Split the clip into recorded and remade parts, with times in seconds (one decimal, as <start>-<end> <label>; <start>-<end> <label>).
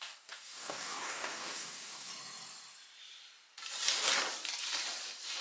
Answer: 0.0-2.1 remade; 2.1-5.4 recorded